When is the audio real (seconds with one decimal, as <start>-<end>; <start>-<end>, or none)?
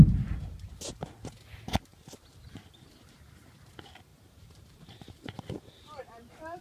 0.0-1.9; 3.5-4.1